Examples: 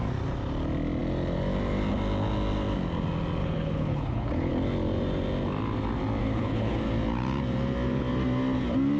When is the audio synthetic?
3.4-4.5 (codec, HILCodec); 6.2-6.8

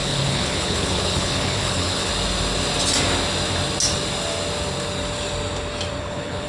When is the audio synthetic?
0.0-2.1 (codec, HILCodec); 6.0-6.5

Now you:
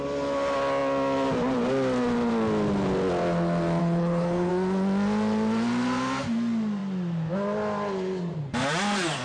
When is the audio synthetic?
3.8-4.5 (codec, HILCodec)

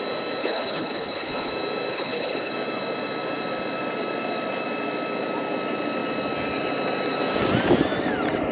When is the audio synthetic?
0.4-1.5 (codec, HILCodec); 1.9-2.5

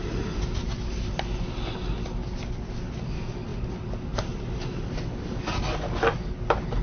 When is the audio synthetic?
none

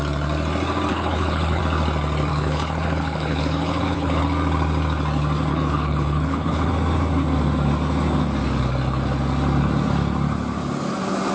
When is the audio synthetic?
0.9-1.6 (codec, HILCodec); 2.3-4.2; 5.5-6.7